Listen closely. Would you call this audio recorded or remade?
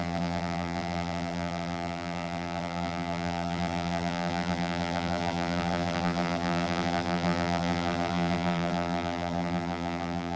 remade